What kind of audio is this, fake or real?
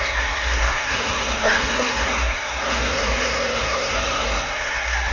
fake